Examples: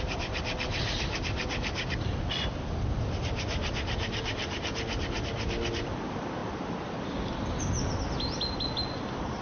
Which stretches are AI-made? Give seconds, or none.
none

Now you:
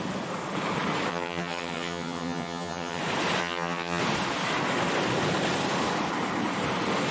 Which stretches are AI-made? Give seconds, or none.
1.1-3.0 (vocoder, HiFi-GAN); 3.4-4.0